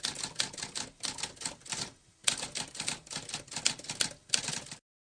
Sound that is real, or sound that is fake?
real